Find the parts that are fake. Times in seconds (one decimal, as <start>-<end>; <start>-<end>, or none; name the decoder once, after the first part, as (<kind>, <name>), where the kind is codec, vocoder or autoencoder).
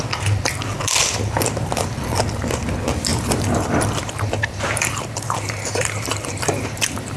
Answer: 3.1-7.2 (vocoder, BigVGAN v2)